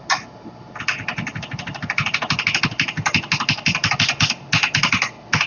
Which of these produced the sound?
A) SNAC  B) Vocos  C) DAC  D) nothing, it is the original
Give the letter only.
D